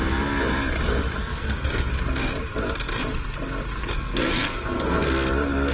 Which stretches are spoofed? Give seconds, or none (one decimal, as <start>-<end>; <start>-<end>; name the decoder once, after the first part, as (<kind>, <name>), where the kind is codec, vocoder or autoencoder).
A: 1.2-1.9 (codec, SNAC); 3.8-5.1